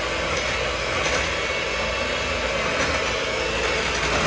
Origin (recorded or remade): recorded